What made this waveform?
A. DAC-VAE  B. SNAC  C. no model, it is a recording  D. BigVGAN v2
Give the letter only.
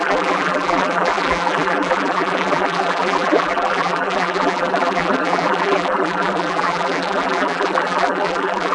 D